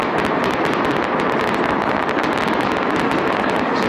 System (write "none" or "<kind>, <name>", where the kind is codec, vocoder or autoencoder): none